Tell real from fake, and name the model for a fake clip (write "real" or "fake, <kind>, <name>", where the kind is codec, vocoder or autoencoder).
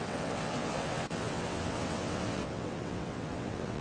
fake, vocoder, WaveNeXt